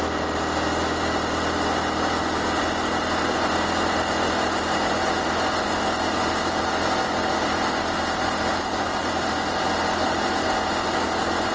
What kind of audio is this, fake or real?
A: real